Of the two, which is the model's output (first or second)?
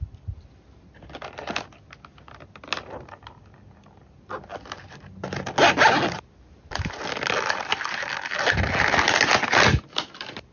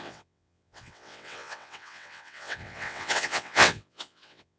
second